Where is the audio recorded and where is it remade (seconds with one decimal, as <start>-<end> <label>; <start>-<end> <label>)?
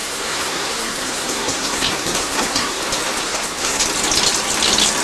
0.0-2.8 remade; 2.8-3.2 recorded; 3.2-3.8 remade; 3.8-5.0 recorded